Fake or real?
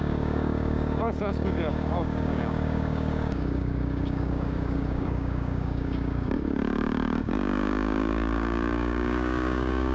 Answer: fake